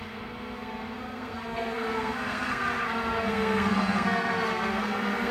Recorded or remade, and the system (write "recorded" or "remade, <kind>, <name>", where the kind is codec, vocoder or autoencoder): remade, codec, SNAC